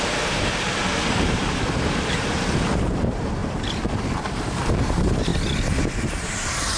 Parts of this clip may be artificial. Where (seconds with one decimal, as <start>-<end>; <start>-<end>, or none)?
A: 0.0-5.3; 5.8-6.8